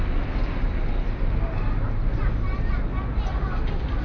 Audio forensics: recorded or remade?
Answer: recorded